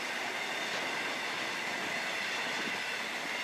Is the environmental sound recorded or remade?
recorded